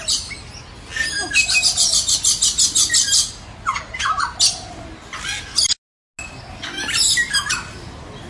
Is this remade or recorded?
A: recorded